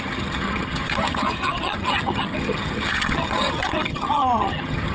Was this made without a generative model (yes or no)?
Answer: no